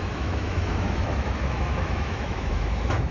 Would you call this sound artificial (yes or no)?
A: yes